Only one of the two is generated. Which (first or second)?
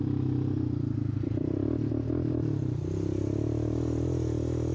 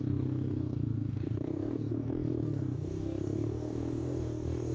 second